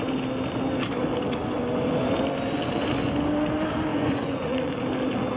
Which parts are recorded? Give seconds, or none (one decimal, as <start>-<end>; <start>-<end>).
0.0-3.9; 4.8-5.4